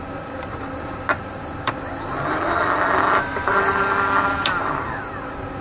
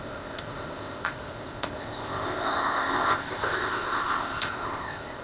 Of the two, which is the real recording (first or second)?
first